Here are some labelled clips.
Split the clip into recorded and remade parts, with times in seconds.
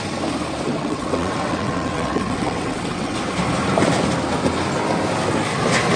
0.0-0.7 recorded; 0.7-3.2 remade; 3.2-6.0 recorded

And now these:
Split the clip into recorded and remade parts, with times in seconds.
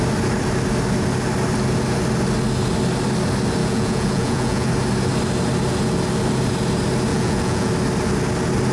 0.0-3.6 recorded; 3.6-4.7 remade; 4.7-7.1 recorded; 7.1-7.7 remade; 7.7-8.7 recorded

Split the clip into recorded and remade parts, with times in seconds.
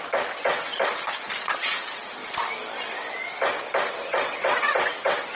0.0-0.7 remade; 0.7-1.4 recorded; 1.4-2.2 remade; 2.2-3.9 recorded; 3.9-5.4 remade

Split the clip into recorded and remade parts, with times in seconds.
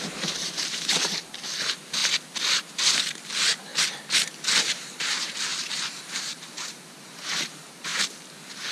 0.0-2.0 remade; 2.0-3.2 recorded; 3.2-3.7 remade; 3.7-4.5 recorded; 4.5-7.9 remade; 7.9-8.7 recorded